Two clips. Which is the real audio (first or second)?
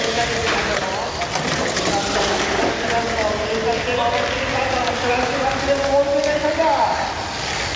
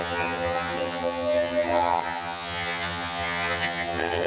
first